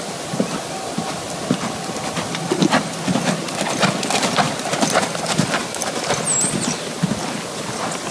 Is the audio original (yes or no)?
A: yes